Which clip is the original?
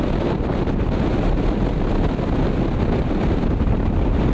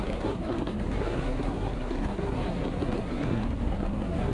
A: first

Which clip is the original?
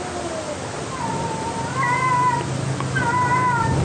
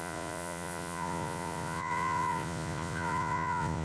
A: first